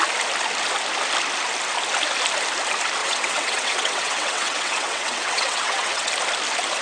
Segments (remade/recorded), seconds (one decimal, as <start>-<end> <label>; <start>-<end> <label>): 0.0-3.0 recorded; 3.0-6.1 remade; 6.1-6.8 recorded